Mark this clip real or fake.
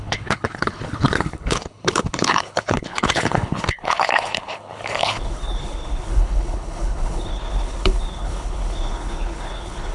fake